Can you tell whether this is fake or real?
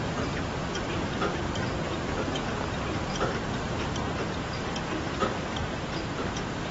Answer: fake